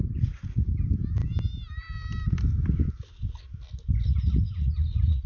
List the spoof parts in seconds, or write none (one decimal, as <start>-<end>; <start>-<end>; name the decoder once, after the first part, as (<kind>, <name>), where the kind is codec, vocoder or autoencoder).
none